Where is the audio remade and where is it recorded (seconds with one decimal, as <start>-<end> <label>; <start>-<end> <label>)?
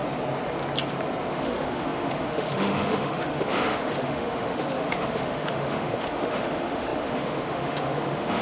0.0-1.3 recorded; 1.3-8.4 remade